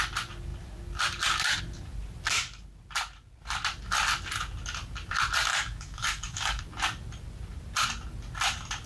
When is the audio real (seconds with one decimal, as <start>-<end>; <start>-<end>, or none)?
0.0-5.5; 6.6-8.9